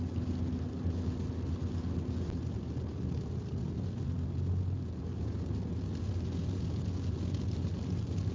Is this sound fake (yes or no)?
no